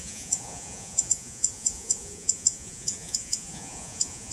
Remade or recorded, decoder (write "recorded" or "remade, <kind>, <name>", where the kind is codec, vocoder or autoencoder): remade, vocoder, Vocos